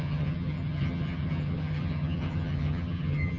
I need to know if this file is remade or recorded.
remade